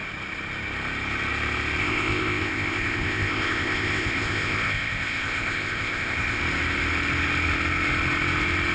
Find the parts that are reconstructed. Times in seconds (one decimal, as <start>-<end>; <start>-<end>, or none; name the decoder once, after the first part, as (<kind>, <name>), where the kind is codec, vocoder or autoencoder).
1.8-6.4 (codec, ZipCodec)